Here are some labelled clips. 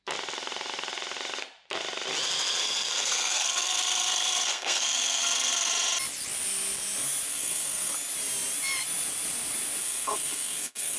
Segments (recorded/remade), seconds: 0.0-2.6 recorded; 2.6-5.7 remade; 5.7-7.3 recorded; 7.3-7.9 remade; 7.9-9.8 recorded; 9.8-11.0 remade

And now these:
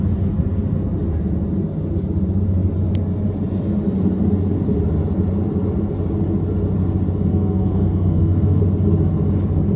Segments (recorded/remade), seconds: 0.0-7.3 recorded; 7.3-8.6 remade; 8.6-9.8 recorded

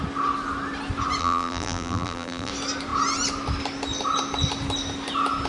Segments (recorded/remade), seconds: 0.0-1.2 recorded; 1.2-2.5 remade; 2.5-5.5 recorded

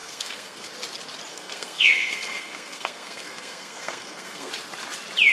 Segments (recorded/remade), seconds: 0.0-0.7 remade; 0.7-1.3 recorded; 1.3-4.5 remade; 4.5-5.3 recorded